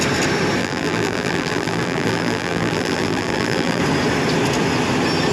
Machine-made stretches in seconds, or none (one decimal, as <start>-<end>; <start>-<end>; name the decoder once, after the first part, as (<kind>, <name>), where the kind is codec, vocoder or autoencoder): 0.6-3.8 (vocoder, BigVGAN v2)